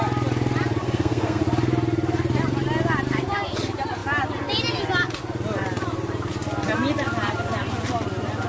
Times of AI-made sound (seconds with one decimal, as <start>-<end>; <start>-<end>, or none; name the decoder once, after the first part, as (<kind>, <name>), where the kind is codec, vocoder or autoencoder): 0.8-1.4 (codec, SNAC)